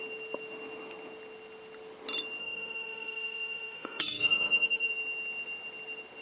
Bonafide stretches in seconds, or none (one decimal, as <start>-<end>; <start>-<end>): 0.0-2.4; 4.9-6.2